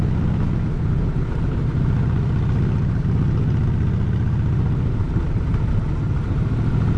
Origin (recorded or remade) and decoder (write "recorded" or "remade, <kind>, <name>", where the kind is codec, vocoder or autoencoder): recorded